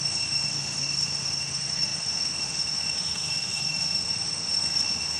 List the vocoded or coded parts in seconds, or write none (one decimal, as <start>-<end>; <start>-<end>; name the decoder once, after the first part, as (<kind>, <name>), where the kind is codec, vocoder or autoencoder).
0.0-5.2 (autoencoder, DAC-VAE)